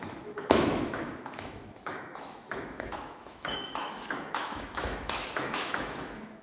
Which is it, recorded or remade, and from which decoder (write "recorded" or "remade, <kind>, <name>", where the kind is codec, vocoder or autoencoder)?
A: remade, autoencoder, DAC-VAE